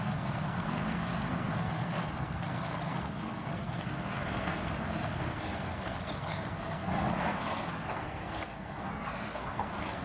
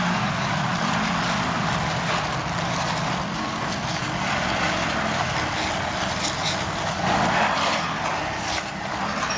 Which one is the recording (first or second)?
second